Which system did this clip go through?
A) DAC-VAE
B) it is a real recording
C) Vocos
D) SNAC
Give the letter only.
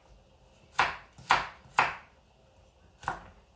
B